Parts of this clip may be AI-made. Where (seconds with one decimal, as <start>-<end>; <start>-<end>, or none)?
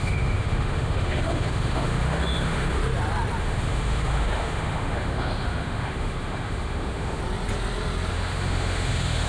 0.0-2.8; 3.4-7.2; 8.1-9.3